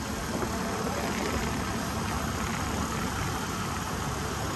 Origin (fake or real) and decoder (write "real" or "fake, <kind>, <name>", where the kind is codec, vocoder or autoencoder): real